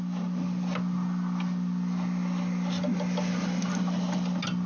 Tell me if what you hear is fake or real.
real